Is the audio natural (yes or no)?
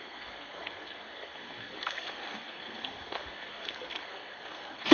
no